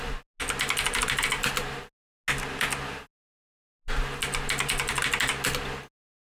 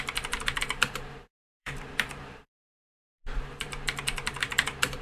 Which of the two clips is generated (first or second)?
second